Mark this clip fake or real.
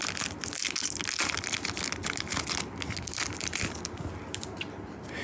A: real